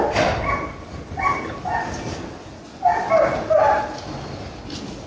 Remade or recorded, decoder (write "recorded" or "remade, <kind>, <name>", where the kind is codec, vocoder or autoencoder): recorded